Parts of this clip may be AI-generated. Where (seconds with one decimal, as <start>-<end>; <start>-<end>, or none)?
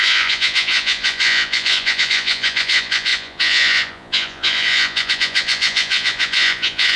0.0-7.0